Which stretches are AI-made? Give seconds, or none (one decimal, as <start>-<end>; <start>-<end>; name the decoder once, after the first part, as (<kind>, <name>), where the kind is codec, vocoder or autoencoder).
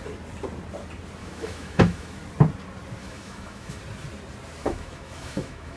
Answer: 1.2-2.2 (autoencoder, DAC-VAE); 3.0-3.8; 4.6-5.8